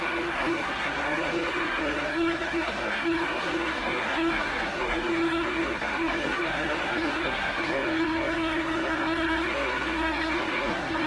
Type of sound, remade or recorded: remade